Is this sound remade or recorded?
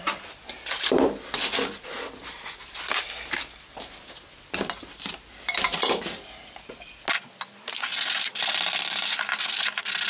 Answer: recorded